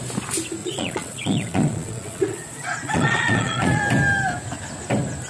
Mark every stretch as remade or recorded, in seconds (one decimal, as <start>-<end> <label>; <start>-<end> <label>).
0.0-0.6 recorded; 0.6-3.8 remade; 3.8-5.3 recorded